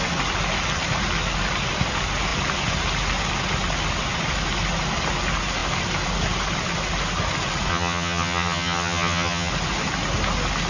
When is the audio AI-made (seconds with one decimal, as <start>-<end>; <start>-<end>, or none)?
7.7-9.5